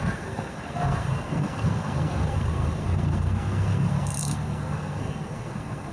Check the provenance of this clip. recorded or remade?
remade